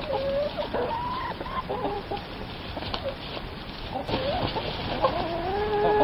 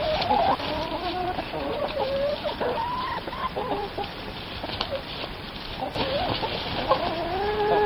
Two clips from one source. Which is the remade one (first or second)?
second